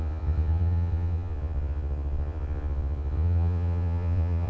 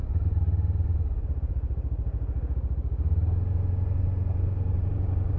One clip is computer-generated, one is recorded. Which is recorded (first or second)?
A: second